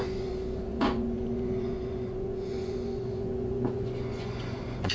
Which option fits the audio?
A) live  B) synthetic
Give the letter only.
B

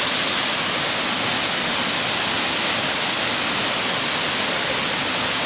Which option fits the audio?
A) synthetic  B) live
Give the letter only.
B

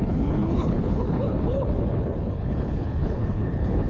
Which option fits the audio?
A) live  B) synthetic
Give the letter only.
B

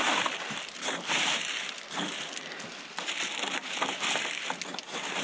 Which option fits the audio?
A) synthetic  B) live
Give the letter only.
B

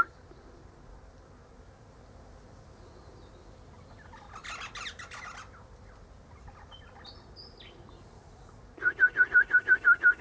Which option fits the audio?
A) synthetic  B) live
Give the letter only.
B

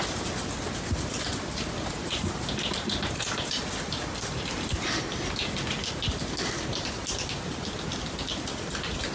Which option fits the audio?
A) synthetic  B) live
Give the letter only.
A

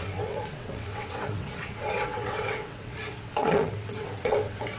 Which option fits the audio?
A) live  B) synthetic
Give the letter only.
B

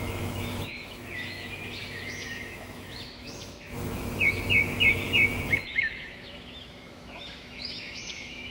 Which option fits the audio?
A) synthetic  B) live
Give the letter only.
A